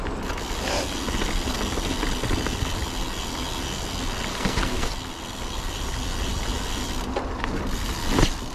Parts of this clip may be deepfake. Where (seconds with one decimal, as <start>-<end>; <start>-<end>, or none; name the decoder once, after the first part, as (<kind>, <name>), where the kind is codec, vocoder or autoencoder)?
4.3-4.9 (codec, SNAC)

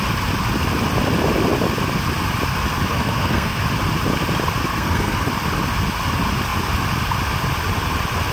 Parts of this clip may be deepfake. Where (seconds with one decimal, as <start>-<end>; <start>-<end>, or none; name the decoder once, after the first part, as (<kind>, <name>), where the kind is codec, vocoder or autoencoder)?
2.9-3.6 (codec, SNAC); 4.7-5.3

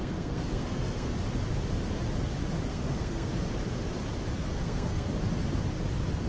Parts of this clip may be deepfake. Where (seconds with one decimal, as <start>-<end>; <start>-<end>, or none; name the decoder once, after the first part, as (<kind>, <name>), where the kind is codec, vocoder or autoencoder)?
0.0-1.1 (codec, SNAC); 2.7-3.3; 4.4-5.1

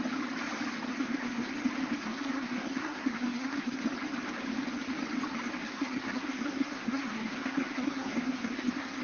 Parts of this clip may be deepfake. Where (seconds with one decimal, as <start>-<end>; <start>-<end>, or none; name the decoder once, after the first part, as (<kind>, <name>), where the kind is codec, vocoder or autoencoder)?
0.9-1.5 (codec, SNAC); 2.0-3.8; 5.7-9.0

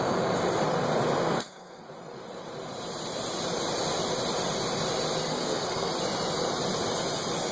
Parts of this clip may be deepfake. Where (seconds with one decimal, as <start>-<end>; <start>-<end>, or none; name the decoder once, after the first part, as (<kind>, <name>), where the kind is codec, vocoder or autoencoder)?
1.2-1.9 (codec, SNAC); 5.3-5.9